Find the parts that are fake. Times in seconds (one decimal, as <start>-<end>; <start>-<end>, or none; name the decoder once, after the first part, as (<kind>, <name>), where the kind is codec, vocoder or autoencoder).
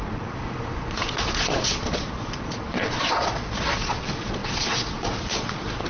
0.0-5.9 (vocoder, Vocos)